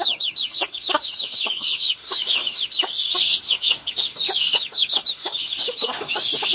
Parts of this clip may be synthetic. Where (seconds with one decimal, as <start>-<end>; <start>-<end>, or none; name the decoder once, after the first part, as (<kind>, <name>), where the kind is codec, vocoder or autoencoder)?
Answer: 0.0-6.5 (autoencoder, DAC-VAE)